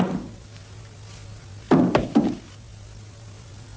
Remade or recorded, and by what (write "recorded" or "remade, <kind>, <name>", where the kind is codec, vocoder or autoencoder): recorded